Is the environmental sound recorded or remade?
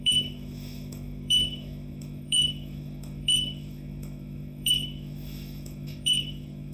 remade